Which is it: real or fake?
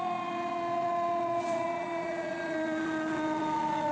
fake